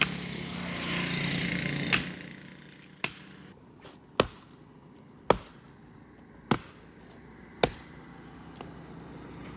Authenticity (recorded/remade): recorded